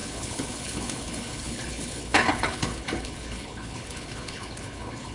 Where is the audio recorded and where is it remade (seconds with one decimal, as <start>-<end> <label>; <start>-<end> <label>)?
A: 0.0-5.1 remade